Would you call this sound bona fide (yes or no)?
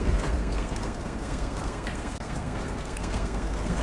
no